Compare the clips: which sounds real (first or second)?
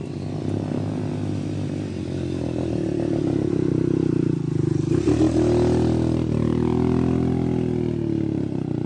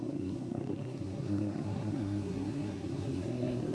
first